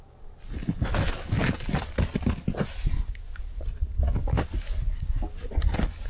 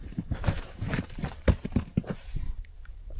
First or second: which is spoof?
second